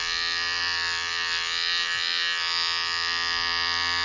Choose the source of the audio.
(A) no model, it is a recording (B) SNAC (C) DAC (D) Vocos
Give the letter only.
A